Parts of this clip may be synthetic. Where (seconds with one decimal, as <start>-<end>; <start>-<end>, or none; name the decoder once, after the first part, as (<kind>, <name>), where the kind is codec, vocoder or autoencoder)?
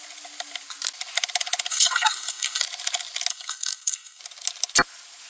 1.7-2.6 (codec, SNAC); 3.3-4.2